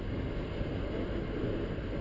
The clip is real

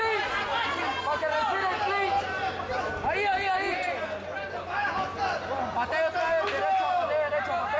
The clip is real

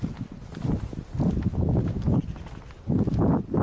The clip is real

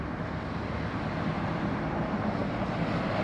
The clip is real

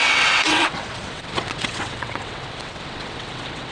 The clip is fake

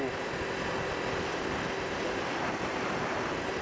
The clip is real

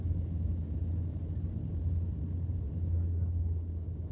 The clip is real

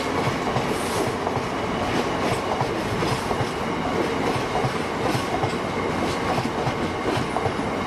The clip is real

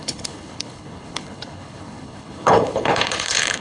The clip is fake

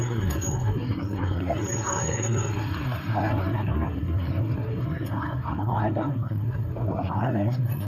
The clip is fake